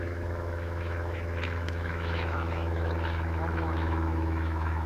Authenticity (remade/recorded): remade